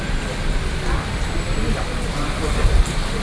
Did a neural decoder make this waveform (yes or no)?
no